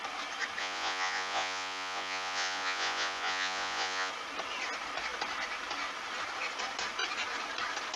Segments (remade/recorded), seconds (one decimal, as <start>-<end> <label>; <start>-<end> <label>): 0.0-0.6 recorded; 0.6-4.1 remade; 4.1-8.0 recorded